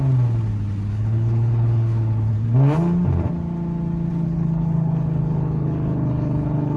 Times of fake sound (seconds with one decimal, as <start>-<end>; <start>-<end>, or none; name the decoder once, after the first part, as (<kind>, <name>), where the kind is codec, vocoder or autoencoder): 0.9-2.3 (codec, HILCodec); 4.1-6.8